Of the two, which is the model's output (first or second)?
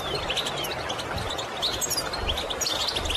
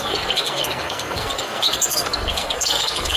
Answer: second